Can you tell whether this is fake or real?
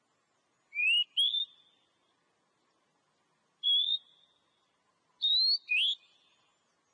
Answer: real